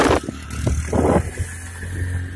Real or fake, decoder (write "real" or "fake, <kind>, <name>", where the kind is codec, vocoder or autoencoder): real